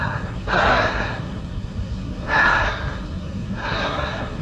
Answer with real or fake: fake